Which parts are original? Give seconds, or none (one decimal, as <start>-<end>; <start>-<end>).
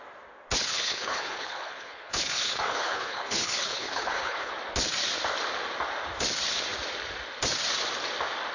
0.0-0.7; 4.5-8.5